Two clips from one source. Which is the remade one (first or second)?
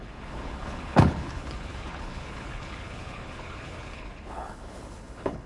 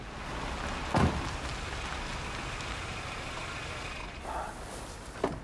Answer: first